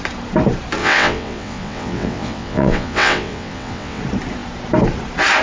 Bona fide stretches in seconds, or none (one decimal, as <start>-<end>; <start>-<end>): 0.0-0.8; 4.0-5.4